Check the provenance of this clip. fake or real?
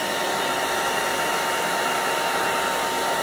real